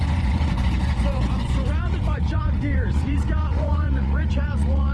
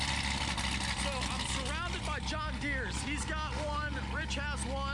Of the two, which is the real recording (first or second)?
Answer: second